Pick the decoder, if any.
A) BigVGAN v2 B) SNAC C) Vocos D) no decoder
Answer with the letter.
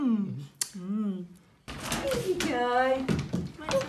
D